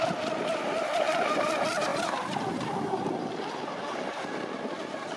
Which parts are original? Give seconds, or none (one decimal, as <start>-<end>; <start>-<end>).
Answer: 0.0-5.2